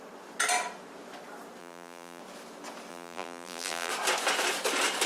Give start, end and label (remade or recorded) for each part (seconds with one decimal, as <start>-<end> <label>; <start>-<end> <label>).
0.0-1.6 recorded; 1.6-2.2 remade; 2.2-2.9 recorded; 2.9-3.9 remade; 3.9-5.1 recorded